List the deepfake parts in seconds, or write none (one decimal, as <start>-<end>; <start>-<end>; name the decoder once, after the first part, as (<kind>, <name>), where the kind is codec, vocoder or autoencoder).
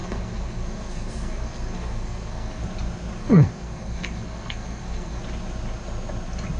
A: 0.0-2.6 (codec, SNAC); 3.2-5.2